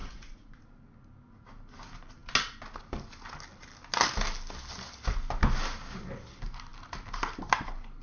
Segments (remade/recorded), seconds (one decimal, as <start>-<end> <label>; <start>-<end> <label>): 0.0-0.6 remade; 0.6-8.0 recorded